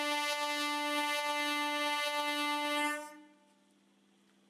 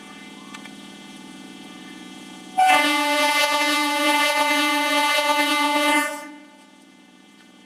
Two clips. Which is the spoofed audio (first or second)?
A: second